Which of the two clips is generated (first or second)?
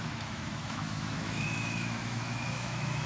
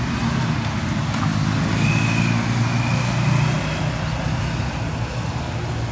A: first